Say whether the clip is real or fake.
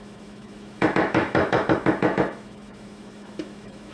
fake